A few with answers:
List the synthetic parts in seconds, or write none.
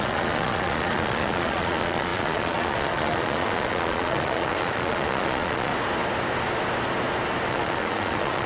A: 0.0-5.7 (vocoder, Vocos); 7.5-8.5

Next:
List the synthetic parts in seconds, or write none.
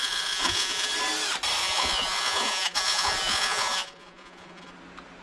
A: 0.0-0.9 (vocoder, Vocos); 1.6-4.7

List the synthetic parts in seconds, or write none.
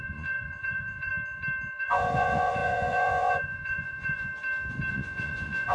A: 0.0-1.1 (vocoder, Vocos); 1.8-4.3; 4.9-5.7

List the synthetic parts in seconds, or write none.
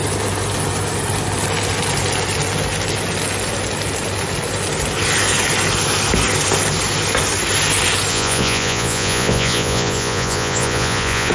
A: 8.1-11.3 (vocoder, Vocos)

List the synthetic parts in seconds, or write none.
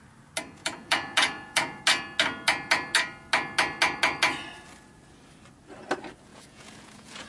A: 0.6-1.8 (vocoder, Vocos); 6.3-7.3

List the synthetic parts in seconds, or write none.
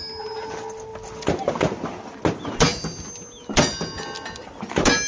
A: none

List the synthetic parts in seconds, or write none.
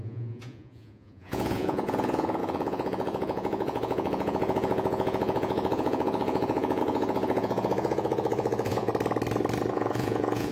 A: 0.0-8.9 (vocoder, Vocos); 9.7-10.5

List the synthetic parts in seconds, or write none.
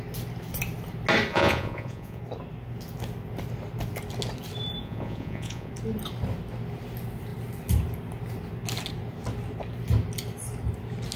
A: 1.3-2.2 (vocoder, Vocos); 4.8-5.7